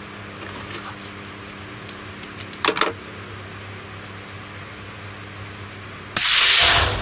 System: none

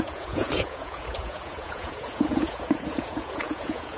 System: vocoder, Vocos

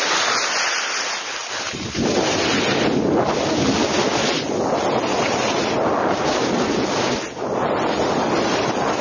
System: none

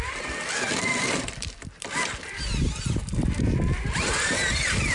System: none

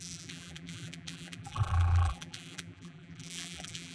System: vocoder, BigVGAN v2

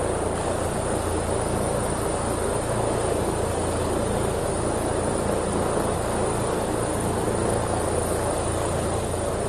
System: none